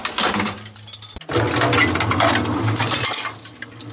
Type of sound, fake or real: real